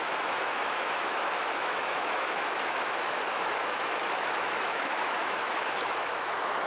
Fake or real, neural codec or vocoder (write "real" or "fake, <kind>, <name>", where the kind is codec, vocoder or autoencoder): fake, autoencoder, DAC-VAE